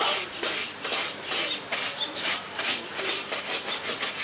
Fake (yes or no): no